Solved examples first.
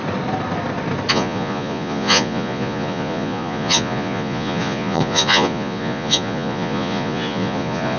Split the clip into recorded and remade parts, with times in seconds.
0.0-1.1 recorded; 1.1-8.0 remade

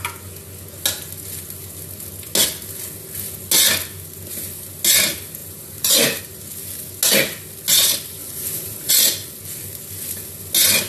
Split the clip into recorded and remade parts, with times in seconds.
0.0-5.4 recorded; 5.4-6.2 remade; 6.2-8.2 recorded; 8.2-8.9 remade; 8.9-10.9 recorded

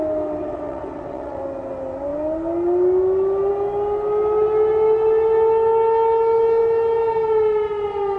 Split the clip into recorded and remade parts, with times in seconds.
0.0-0.4 recorded; 0.4-1.4 remade; 1.4-8.2 recorded

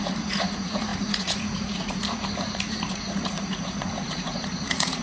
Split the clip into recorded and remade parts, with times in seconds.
0.0-5.0 remade

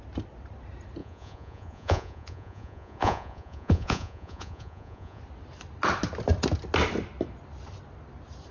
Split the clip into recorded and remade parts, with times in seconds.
0.0-1.0 recorded; 1.0-5.2 remade; 5.2-8.5 recorded

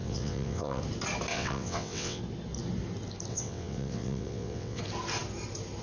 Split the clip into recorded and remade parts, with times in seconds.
0.0-0.8 remade; 0.8-1.3 recorded; 1.3-2.2 remade; 2.2-3.3 recorded; 3.3-4.8 remade; 4.8-5.8 recorded

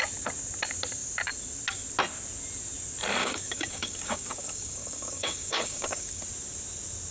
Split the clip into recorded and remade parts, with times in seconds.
0.0-3.2 recorded; 3.2-6.2 remade; 6.2-7.1 recorded